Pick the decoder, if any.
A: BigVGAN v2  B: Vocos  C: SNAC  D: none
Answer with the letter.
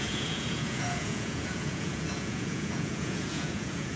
B